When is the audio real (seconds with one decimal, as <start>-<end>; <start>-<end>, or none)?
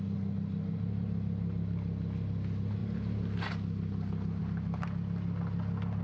0.0-6.0